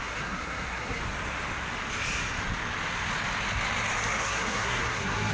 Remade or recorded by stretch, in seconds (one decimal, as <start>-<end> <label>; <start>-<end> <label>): 0.0-1.0 remade; 1.0-4.2 recorded; 4.2-5.3 remade